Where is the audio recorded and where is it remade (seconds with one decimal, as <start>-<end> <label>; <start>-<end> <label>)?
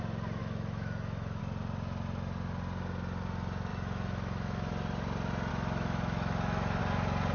0.0-0.4 recorded; 0.4-1.4 remade; 1.4-3.7 recorded; 3.7-4.7 remade; 4.7-5.5 recorded; 5.5-6.8 remade; 6.8-7.3 recorded